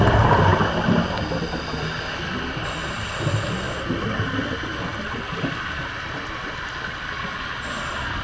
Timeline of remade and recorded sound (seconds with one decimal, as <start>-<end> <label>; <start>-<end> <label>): 0.0-2.8 recorded; 2.8-3.7 remade; 3.7-8.2 recorded